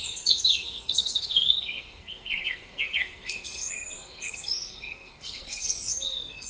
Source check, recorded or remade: remade